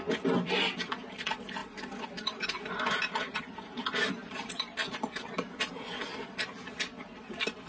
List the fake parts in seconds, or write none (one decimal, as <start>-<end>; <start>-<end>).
1.6-3.8; 4.2-5.3